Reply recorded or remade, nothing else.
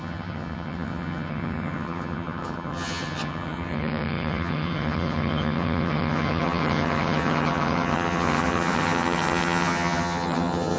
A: remade